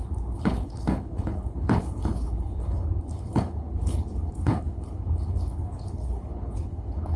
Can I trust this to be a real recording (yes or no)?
no